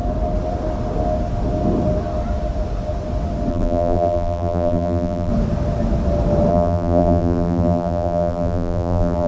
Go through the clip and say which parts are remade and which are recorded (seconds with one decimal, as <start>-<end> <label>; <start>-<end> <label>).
0.0-3.5 recorded; 3.5-5.3 remade; 5.3-6.5 recorded; 6.5-9.3 remade